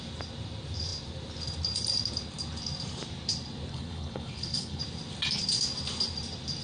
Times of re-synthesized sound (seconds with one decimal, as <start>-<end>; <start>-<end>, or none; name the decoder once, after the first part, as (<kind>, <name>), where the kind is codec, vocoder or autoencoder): 3.7-4.8 (codec, HILCodec)